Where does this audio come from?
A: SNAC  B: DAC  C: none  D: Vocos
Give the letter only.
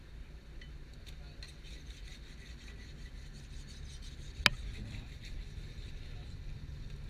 C